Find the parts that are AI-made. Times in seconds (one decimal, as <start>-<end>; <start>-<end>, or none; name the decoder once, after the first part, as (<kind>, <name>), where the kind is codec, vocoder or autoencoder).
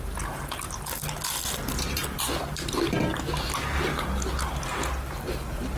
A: none